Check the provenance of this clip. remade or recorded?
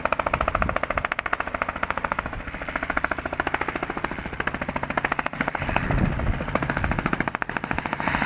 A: remade